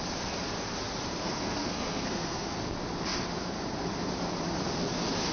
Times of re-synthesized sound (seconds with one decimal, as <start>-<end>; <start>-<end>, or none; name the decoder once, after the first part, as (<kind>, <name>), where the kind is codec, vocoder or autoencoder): 1.2-2.6 (codec, SNAC)